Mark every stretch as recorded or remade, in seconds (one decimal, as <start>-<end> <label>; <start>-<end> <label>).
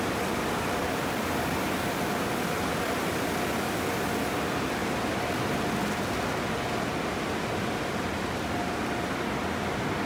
0.0-10.1 recorded